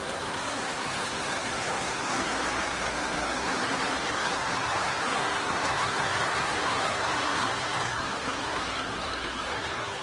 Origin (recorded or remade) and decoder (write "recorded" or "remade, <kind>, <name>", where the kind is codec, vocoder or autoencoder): remade, codec, SNAC